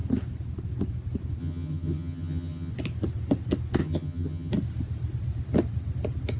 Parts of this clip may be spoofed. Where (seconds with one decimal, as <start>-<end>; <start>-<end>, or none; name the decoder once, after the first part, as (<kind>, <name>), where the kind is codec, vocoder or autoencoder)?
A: 1.4-2.7 (vocoder, HiFi-GAN); 3.8-4.5